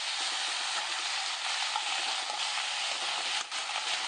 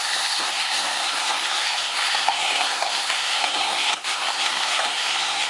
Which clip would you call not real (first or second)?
second